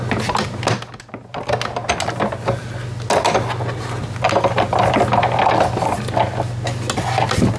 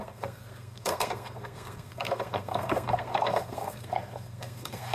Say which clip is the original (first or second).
first